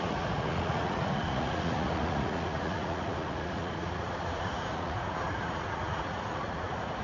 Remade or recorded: remade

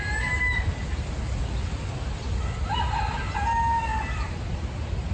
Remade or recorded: recorded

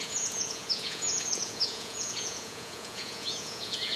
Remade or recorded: remade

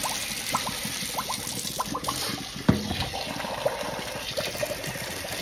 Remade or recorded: recorded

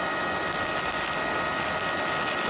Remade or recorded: recorded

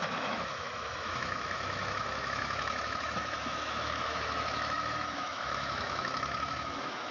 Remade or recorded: remade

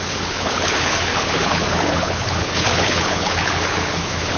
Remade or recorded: remade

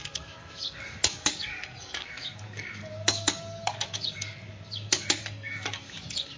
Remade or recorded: remade